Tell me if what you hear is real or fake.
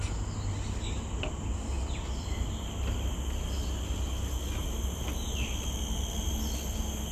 real